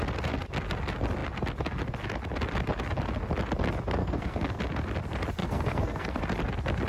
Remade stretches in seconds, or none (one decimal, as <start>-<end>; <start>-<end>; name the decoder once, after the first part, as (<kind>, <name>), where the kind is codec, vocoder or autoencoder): 4.0-4.6 (codec, SNAC); 5.4-6.2